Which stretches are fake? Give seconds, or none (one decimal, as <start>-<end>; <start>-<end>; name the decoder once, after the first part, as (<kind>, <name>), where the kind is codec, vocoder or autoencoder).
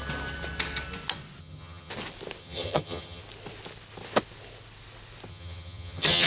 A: 1.4-1.9 (vocoder, HiFi-GAN); 2.4-3.2; 5.3-6.3